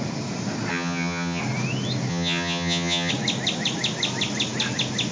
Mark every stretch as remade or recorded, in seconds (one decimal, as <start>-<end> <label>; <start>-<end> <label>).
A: 0.0-0.7 recorded; 0.7-1.4 remade; 1.4-2.1 recorded; 2.1-3.1 remade; 3.1-5.1 recorded